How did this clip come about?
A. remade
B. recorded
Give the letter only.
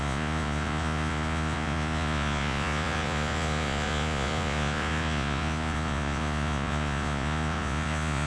A